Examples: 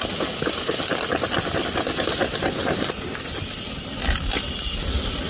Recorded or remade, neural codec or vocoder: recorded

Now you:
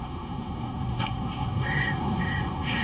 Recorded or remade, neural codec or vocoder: remade, codec, SNAC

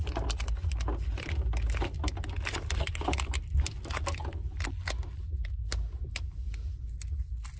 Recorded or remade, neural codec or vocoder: recorded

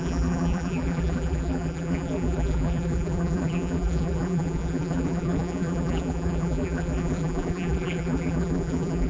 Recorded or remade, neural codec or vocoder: remade, vocoder, BigVGAN v2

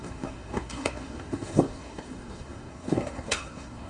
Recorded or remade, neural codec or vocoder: remade, codec, SNAC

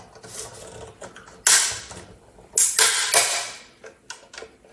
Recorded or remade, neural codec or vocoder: recorded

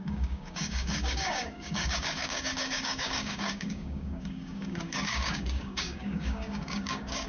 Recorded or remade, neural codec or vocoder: remade, codec, DAC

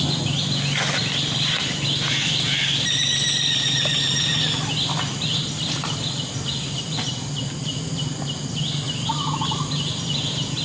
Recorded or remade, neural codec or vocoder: recorded